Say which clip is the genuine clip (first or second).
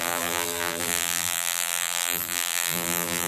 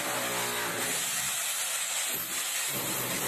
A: second